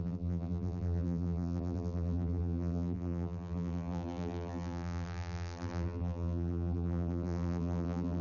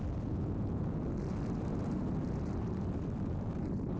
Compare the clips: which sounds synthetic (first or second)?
first